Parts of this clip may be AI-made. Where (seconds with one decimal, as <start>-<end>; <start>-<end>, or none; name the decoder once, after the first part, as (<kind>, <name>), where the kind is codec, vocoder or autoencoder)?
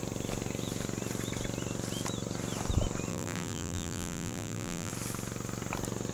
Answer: 3.1-4.9 (vocoder, BigVGAN v2)